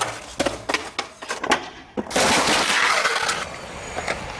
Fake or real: real